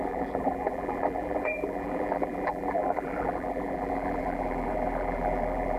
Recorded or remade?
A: remade